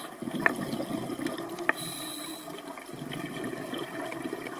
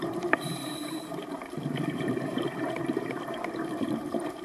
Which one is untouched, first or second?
first